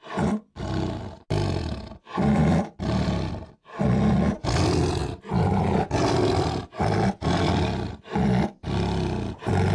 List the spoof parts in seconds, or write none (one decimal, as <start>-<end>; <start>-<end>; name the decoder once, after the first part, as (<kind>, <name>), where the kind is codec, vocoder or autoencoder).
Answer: none